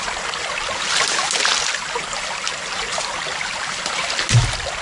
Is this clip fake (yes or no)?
no